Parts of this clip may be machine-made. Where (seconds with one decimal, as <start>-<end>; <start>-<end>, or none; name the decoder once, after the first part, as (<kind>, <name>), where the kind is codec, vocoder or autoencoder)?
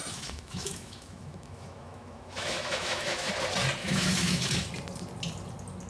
0.0-3.3 (autoencoder, DAC-VAE); 3.8-4.7